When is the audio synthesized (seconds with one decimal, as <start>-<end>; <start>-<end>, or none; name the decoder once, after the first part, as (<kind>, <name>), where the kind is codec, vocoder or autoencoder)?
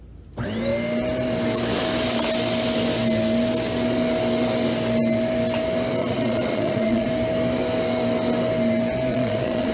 6.0-7.1 (vocoder, Vocos); 9.1-9.7